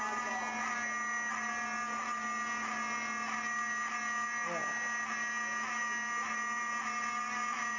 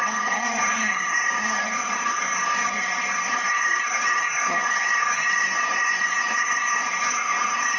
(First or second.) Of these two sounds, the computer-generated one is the second